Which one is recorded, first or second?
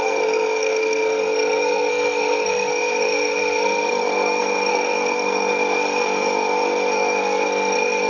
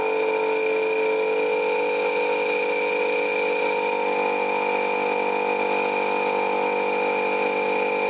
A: second